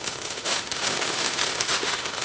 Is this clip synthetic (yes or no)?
yes